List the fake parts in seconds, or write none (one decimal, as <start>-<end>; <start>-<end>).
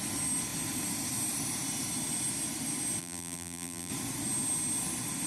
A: 3.0-3.9